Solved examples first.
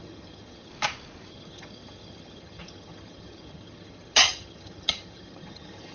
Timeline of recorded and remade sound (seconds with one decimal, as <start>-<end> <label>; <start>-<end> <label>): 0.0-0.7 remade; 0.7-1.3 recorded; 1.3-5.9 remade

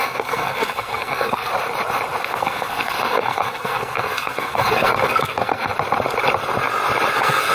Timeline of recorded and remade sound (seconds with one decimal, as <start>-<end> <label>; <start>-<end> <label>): 0.0-1.5 remade; 1.5-2.2 recorded; 2.2-5.7 remade; 5.7-7.1 recorded; 7.1-7.5 remade

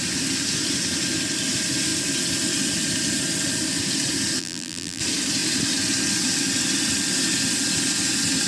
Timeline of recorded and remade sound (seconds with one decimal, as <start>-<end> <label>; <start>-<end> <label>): 0.0-4.4 recorded; 4.4-5.0 remade; 5.0-8.5 recorded